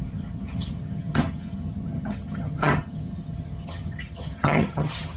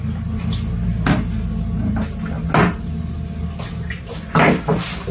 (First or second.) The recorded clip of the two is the second